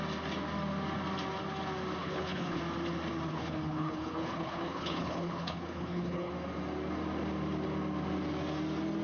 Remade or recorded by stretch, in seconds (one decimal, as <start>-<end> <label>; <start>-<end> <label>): 0.0-2.0 recorded; 2.0-2.6 remade; 2.6-3.3 recorded; 3.3-6.3 remade; 6.3-9.0 recorded